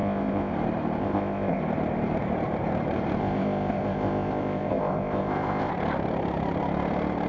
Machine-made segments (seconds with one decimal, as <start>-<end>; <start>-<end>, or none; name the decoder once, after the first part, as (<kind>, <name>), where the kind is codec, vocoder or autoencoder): 0.0-0.5 (codec, ZipCodec); 1.0-1.6; 3.2-5.7